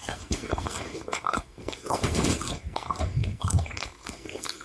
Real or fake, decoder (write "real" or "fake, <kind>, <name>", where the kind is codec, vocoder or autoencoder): fake, codec, SNAC